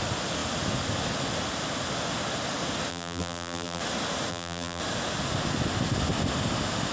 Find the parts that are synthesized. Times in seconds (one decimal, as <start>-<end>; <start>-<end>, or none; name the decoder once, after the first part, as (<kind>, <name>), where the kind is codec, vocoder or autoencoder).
2.9-3.8 (vocoder, BigVGAN v2); 4.3-4.8